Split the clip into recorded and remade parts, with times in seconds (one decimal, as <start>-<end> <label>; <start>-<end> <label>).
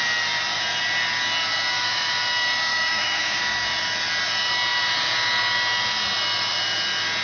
0.0-2.7 recorded; 2.7-3.4 remade; 3.4-7.2 recorded